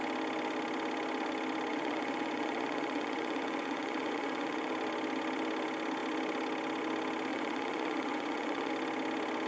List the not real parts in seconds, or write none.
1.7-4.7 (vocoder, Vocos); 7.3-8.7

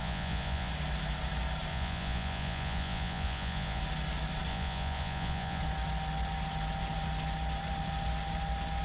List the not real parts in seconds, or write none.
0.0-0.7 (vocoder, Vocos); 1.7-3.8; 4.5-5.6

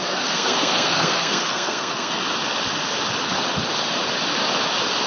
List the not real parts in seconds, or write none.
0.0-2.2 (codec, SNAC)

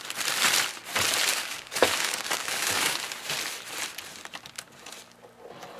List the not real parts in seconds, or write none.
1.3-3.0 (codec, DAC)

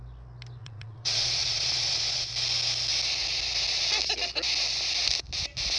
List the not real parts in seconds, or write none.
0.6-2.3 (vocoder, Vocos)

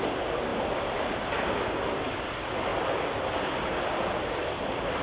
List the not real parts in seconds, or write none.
none

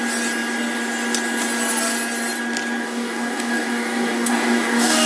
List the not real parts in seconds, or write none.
2.8-5.1 (codec, DAC)

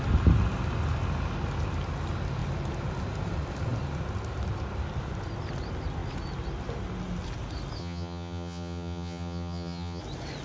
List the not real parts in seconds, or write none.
7.8-10.0 (vocoder, HiFi-GAN)